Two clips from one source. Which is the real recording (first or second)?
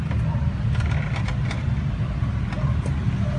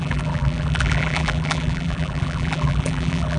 first